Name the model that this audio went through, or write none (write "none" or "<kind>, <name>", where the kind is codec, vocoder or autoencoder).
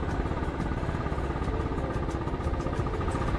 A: none